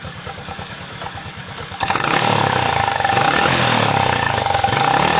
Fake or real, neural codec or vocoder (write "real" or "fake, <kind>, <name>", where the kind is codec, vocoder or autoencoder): fake, codec, DAC